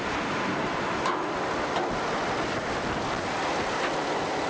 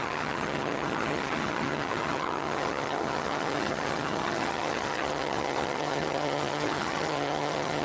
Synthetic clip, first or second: second